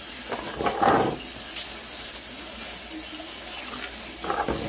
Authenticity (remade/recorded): recorded